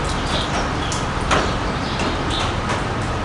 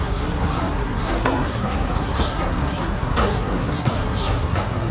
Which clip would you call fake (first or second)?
second